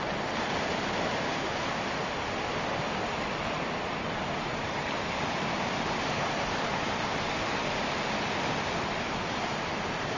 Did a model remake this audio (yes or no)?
no